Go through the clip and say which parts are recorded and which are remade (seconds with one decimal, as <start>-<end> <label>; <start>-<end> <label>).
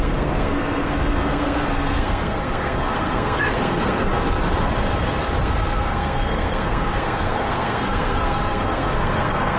0.0-4.1 remade; 4.1-5.4 recorded; 5.4-9.6 remade